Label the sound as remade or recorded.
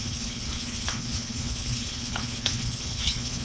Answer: remade